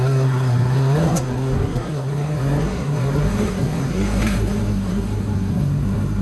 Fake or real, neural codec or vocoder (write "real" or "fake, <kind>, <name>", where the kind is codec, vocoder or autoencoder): fake, codec, SNAC